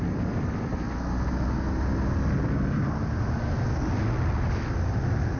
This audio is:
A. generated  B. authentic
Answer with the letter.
B